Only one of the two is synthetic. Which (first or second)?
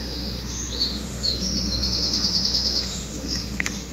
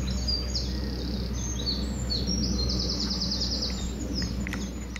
first